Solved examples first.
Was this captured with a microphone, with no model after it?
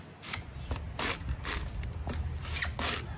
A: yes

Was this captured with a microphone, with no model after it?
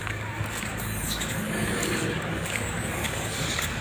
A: no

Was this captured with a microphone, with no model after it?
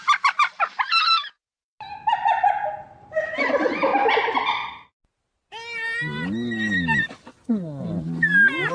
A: yes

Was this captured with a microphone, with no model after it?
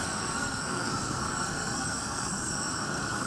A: no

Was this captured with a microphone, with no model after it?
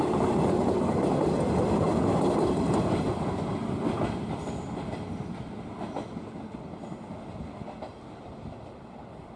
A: yes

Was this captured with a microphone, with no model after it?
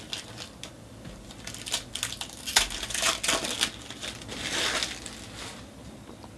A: yes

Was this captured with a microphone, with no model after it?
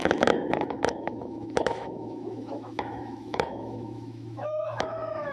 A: no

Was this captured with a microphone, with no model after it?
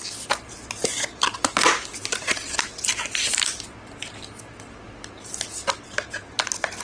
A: yes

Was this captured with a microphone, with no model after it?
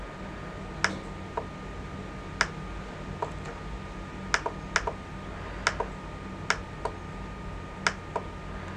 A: yes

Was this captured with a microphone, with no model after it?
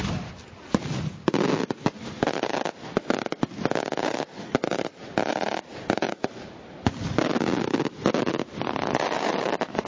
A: yes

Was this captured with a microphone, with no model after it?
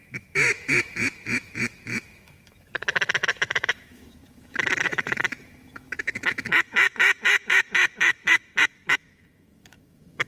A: no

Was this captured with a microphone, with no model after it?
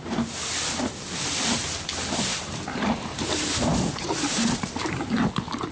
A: no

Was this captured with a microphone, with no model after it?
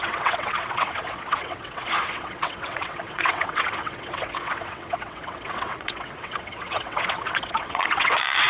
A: no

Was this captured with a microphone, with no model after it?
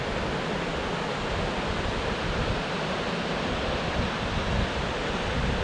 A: yes